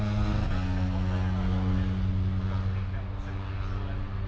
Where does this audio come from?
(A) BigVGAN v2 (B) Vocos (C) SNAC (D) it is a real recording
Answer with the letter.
D